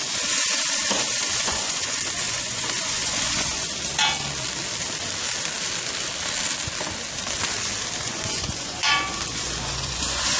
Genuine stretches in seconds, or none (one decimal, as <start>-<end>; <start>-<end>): 3.7-8.0